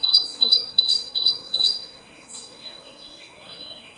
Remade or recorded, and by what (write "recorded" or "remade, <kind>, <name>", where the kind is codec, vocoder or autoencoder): remade, codec, SNAC